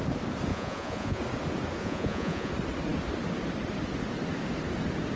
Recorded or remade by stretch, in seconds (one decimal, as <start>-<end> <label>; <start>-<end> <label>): 0.0-0.5 recorded; 0.5-1.2 remade; 1.2-1.8 recorded; 1.8-2.5 remade; 2.5-5.2 recorded